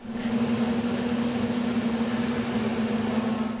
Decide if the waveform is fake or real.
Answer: real